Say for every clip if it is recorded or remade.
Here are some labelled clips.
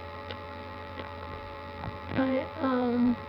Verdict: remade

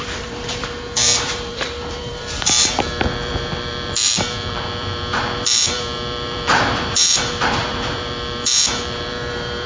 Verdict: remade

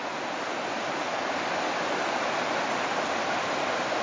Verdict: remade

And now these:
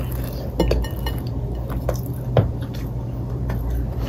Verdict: recorded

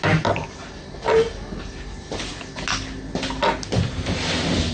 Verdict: recorded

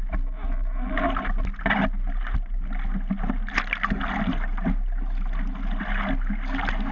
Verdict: recorded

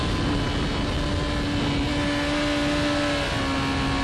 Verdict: recorded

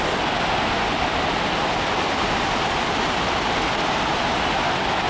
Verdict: recorded